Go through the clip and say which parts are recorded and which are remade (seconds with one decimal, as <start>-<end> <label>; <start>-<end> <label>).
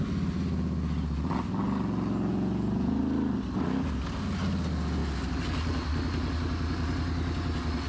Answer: 0.0-2.3 recorded; 2.3-3.0 remade; 3.0-7.9 recorded